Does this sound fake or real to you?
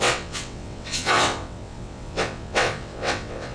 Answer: fake